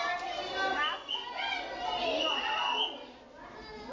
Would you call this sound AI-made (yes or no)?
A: no